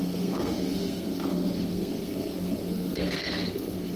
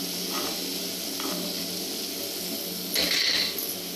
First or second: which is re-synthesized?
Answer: first